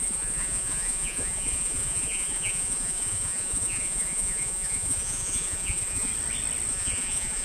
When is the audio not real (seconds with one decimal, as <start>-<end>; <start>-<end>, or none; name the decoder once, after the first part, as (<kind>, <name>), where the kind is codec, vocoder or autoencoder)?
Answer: 0.0-6.1 (vocoder, Vocos); 6.7-7.4

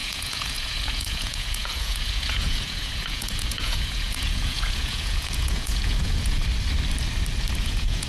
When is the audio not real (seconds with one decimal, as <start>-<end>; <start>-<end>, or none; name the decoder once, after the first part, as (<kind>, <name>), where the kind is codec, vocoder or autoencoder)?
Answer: 0.0-6.4 (vocoder, Vocos); 7.6-8.1

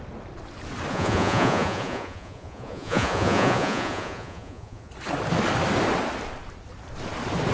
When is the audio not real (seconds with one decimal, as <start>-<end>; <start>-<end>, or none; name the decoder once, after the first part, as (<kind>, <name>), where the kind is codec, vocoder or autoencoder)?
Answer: 0.9-4.9 (vocoder, Vocos)

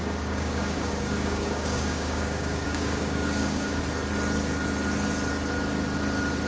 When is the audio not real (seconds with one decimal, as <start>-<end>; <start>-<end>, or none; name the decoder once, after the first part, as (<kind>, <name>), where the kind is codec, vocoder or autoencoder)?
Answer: 0.0-3.8 (codec, DAC)